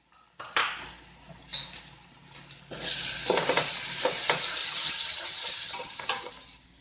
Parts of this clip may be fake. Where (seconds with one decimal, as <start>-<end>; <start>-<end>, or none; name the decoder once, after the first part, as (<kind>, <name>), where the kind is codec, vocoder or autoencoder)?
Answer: 4.6-6.3 (vocoder, HiFi-GAN)